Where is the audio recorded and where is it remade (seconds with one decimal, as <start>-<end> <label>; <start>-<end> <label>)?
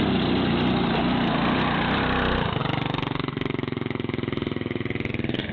0.0-5.5 recorded